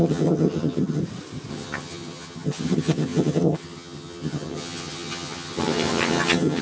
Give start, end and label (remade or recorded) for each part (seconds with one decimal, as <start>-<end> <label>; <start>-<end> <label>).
0.0-1.0 remade; 1.0-1.5 recorded; 1.5-6.6 remade